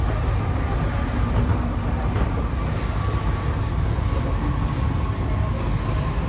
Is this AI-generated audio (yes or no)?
no